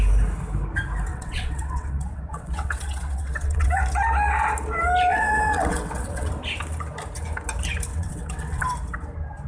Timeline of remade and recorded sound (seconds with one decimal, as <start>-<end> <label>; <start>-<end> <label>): 0.0-1.1 recorded; 1.1-3.8 remade; 3.8-5.1 recorded; 5.1-6.3 remade; 6.3-7.9 recorded; 7.9-8.6 remade; 8.6-9.5 recorded